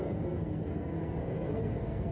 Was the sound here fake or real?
fake